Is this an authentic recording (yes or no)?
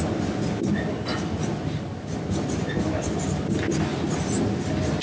yes